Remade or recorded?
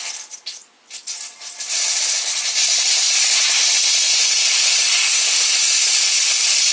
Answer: recorded